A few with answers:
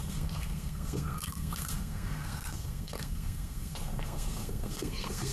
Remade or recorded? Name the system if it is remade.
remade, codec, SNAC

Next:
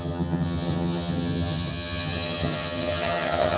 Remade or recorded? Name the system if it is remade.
remade, vocoder, HiFi-GAN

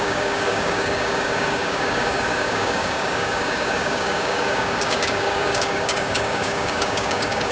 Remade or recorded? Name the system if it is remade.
remade, codec, DAC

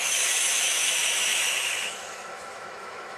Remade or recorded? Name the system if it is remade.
remade, autoencoder, DAC-VAE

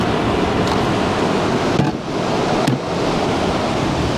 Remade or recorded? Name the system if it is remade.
recorded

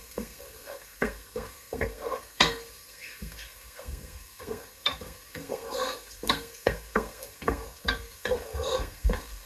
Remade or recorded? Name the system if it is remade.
remade, codec, SNAC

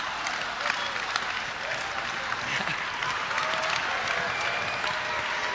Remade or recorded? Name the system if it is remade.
recorded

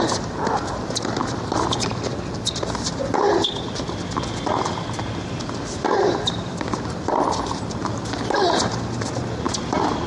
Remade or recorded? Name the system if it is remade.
remade, vocoder, BigVGAN v2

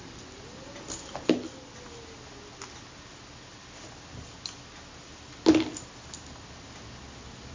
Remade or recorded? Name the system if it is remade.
recorded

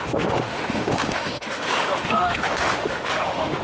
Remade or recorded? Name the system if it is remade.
remade, autoencoder, DAC-VAE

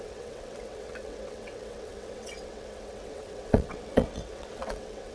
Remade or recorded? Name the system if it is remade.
remade, vocoder, WaveNeXt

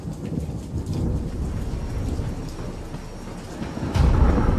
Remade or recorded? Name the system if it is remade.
recorded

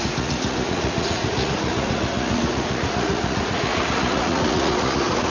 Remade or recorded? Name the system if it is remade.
remade, vocoder, Vocos